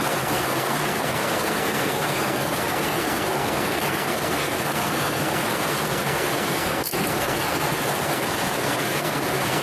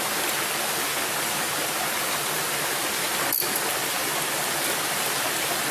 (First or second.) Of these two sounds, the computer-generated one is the first